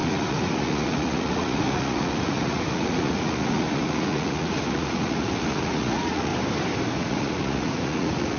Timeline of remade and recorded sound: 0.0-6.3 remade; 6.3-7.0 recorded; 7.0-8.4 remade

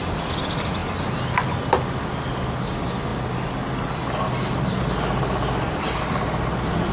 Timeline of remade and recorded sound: 0.0-6.9 recorded

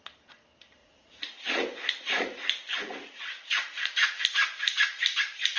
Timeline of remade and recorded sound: 0.0-0.8 recorded; 0.8-4.2 remade; 4.2-5.6 recorded

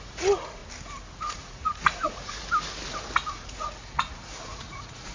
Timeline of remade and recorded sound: 0.0-0.6 remade; 0.6-1.2 recorded; 1.2-2.4 remade; 2.4-3.3 recorded; 3.3-5.1 remade

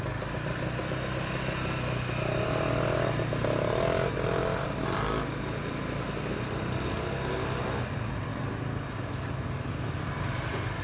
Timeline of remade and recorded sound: 0.0-10.8 recorded